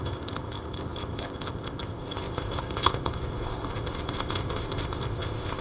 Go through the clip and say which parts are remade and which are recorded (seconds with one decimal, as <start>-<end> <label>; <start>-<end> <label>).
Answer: 0.0-5.6 remade

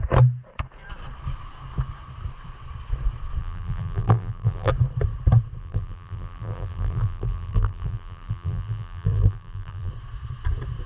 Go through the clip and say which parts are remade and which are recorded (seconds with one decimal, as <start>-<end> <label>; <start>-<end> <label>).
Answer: 0.0-3.4 recorded; 3.4-4.7 remade; 4.7-5.6 recorded; 5.6-9.9 remade; 9.9-10.9 recorded

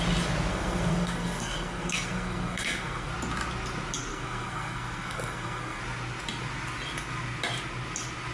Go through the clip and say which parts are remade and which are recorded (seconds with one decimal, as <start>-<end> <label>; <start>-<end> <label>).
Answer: 0.0-0.5 recorded; 0.5-3.1 remade; 3.1-4.1 recorded; 4.1-5.8 remade; 5.8-8.3 recorded